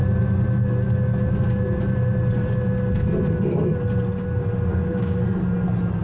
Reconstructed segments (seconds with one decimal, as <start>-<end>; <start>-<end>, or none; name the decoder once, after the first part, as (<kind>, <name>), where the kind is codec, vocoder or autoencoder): 4.7-5.2 (codec, DAC)